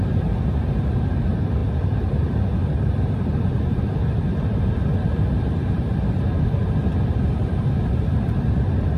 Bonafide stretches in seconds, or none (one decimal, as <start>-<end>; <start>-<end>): 6.6-7.2